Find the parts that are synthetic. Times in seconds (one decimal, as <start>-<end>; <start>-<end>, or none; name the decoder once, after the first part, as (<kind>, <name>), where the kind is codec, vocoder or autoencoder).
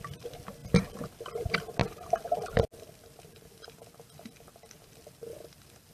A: none